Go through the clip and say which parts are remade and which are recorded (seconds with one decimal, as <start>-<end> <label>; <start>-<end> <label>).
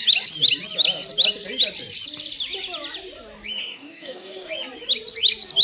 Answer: 0.0-3.6 recorded; 3.6-4.5 remade; 4.5-5.6 recorded